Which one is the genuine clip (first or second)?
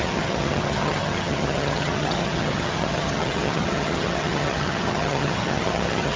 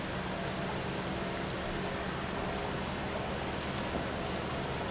second